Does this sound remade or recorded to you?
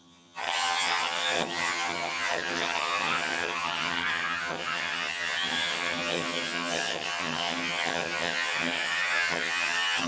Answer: remade